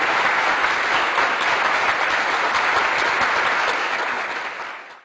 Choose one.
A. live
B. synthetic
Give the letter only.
A